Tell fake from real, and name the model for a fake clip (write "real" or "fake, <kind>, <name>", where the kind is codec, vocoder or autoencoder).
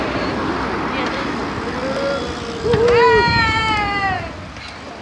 real